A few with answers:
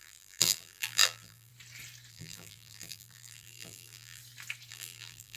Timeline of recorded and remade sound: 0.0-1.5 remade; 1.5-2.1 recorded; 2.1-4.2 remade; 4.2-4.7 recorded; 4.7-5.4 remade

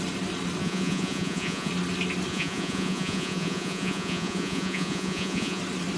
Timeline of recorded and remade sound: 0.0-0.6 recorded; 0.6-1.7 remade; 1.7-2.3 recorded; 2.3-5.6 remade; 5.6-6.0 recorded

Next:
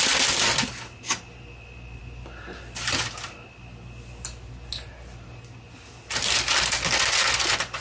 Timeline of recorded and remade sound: 0.0-7.8 recorded